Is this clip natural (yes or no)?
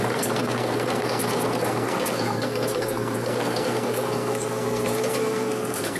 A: no